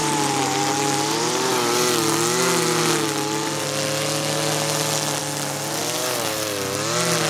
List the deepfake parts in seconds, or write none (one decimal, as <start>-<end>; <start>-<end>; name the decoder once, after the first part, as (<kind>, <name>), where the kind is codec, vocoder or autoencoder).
0.0-0.6 (vocoder, BigVGAN v2)